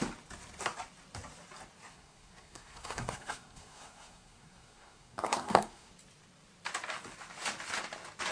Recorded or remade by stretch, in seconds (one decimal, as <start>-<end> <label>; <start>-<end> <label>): 0.0-1.9 recorded; 1.9-5.9 remade; 5.9-8.3 recorded